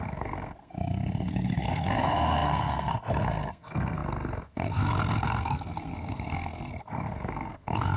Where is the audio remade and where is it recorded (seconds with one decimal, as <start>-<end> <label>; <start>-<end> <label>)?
0.0-8.0 remade